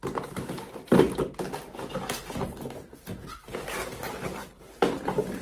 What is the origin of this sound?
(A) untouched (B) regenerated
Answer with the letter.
A